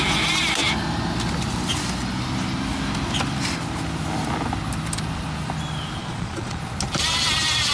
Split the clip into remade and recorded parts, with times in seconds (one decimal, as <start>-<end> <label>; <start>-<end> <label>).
0.0-6.0 recorded; 6.0-6.6 remade; 6.6-7.7 recorded